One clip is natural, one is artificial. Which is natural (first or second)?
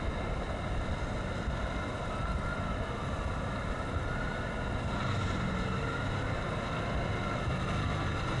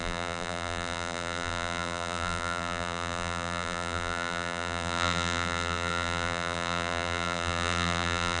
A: first